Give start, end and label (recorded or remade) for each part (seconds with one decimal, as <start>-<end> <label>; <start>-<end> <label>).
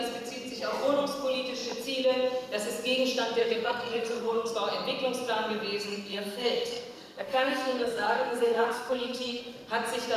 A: 0.0-3.4 recorded; 3.4-4.5 remade; 4.5-5.9 recorded; 5.9-9.4 remade; 9.4-10.2 recorded